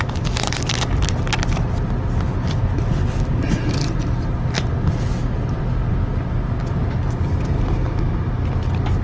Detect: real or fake real